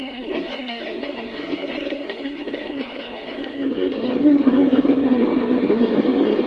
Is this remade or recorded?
remade